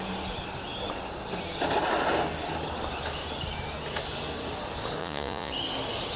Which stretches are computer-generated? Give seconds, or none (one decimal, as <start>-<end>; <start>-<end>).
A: 5.0-5.5